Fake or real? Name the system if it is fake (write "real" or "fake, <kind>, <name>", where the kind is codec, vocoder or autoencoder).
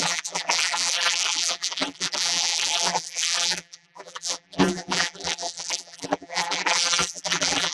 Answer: fake, vocoder, BigVGAN v2